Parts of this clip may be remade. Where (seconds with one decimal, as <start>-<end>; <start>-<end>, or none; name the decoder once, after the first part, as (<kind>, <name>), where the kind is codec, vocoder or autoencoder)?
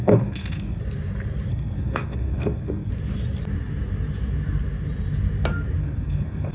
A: 0.0-0.8 (codec, SNAC); 1.5-2.9; 5.8-6.5